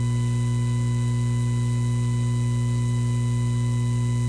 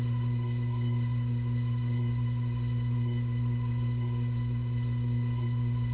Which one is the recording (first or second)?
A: first